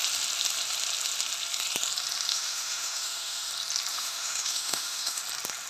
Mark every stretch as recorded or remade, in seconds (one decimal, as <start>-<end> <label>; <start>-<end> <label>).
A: 0.0-2.3 recorded; 2.3-3.5 remade; 3.5-3.9 recorded; 3.9-5.2 remade; 5.2-5.7 recorded